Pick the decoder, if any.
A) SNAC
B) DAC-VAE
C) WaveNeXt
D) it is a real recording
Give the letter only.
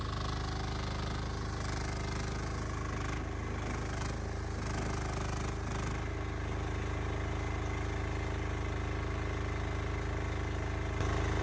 D